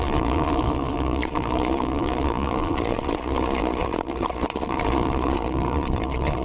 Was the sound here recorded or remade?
remade